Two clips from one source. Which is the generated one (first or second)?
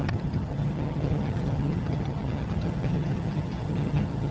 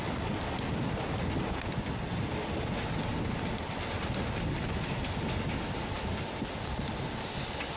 first